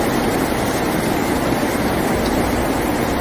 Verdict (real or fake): real